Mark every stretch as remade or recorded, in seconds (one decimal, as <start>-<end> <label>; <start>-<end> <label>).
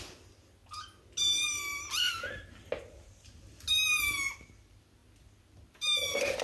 0.0-6.4 recorded